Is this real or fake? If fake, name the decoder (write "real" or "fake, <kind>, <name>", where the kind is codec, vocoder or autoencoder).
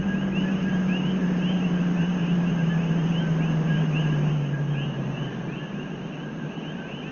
real